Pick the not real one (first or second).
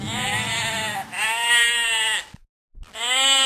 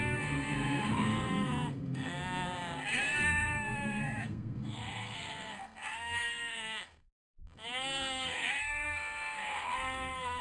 second